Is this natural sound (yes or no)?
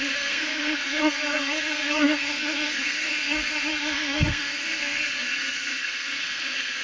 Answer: no